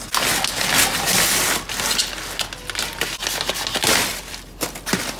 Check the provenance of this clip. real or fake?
real